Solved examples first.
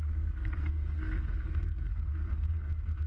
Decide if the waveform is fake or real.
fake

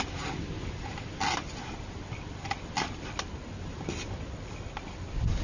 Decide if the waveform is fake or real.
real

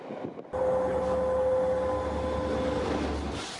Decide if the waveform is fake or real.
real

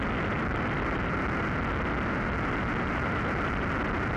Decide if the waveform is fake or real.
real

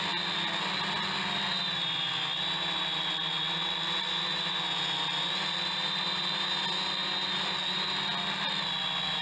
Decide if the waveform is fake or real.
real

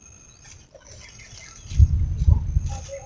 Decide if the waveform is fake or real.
real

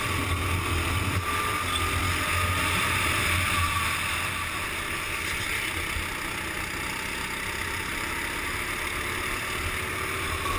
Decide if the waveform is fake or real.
real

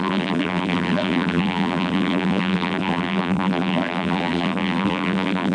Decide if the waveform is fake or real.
fake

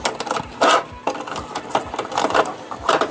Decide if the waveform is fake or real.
fake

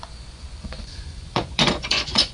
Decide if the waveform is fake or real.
fake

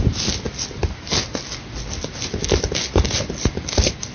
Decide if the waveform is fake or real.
real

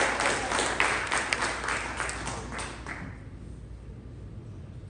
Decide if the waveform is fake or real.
real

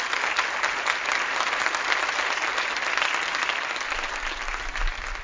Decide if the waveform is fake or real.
real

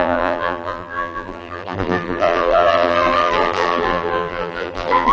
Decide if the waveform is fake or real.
fake